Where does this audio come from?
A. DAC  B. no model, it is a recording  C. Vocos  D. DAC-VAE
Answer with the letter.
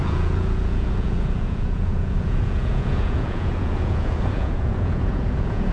C